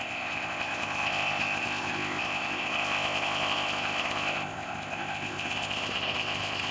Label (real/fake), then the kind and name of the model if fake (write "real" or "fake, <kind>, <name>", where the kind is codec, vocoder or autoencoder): fake, codec, ZipCodec